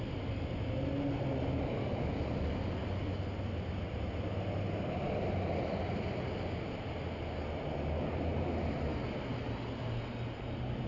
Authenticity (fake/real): real